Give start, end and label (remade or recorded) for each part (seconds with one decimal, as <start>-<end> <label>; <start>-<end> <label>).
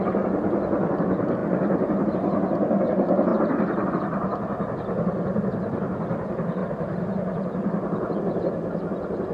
0.0-9.3 recorded